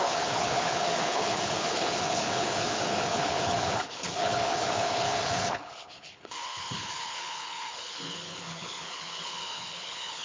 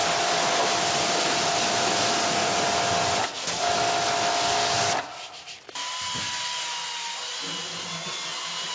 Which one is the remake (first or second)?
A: first